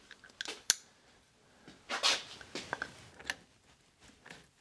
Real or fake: real